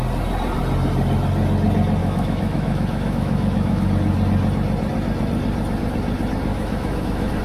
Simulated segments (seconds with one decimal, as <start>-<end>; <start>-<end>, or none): 2.0-3.9; 6.5-7.4